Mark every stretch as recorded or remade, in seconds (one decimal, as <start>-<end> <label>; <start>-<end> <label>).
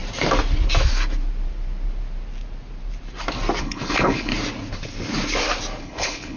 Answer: 0.0-3.6 recorded; 3.6-4.3 remade; 4.3-5.8 recorded; 5.8-6.4 remade